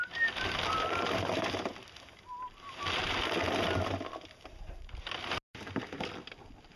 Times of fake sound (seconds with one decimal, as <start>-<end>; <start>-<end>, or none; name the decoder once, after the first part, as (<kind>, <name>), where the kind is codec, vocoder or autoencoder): none

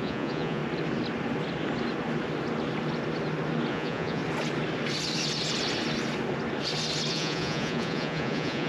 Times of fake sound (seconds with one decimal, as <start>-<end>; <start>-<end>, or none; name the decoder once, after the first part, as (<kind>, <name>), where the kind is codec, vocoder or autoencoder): 0.0-0.6 (vocoder, Vocos); 3.7-4.2; 7.1-8.7

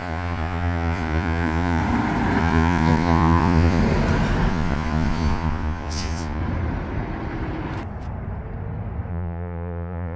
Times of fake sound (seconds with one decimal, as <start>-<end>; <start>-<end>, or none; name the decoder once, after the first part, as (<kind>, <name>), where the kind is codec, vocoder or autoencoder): 0.0-1.8 (vocoder, Vocos); 2.4-3.8; 4.5-6.4; 9.1-10.2

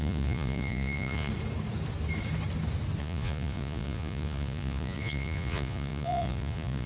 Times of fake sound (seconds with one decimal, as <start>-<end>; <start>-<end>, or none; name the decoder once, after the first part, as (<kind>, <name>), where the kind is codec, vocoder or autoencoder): 0.0-1.3 (vocoder, Vocos); 3.0-6.9

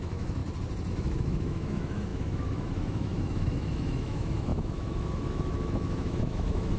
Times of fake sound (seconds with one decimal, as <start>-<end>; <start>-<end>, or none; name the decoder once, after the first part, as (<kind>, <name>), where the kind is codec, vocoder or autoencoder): 0.0-0.4 (autoencoder, DAC-VAE); 0.9-6.8

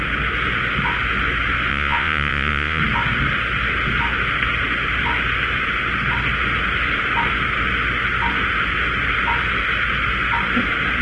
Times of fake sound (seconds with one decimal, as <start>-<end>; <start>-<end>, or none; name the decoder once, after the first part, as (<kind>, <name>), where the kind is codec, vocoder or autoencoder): 1.7-2.8 (vocoder, Vocos)

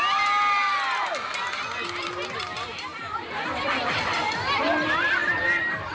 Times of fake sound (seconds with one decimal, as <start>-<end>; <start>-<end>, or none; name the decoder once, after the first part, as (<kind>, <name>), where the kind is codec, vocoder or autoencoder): 2.9-4.0 (vocoder, BigVGAN v2); 5.2-5.9